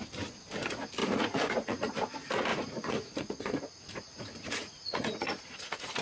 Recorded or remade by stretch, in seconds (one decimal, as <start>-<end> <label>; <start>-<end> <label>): 0.0-1.0 recorded; 1.0-1.9 remade; 1.9-2.5 recorded; 2.5-6.0 remade